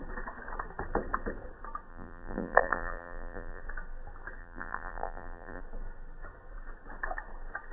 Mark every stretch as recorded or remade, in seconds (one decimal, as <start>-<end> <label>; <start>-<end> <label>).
0.0-1.9 recorded; 1.9-3.6 remade; 3.6-4.4 recorded; 4.4-5.6 remade; 5.6-7.7 recorded